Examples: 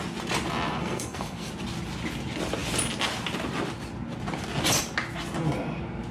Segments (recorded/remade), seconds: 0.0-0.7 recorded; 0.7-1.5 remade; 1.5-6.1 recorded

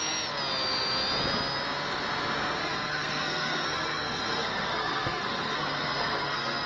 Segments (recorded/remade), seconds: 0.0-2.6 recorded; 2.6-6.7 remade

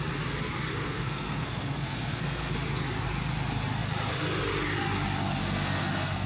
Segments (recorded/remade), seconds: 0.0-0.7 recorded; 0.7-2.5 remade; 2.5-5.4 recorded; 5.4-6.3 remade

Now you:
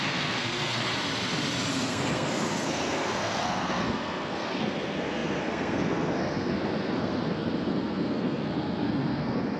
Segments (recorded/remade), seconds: 0.0-0.9 remade; 0.9-1.7 recorded; 1.7-9.6 remade